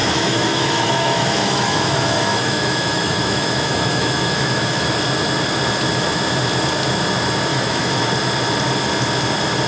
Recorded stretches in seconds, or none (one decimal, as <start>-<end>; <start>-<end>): 4.9-7.5; 8.1-9.7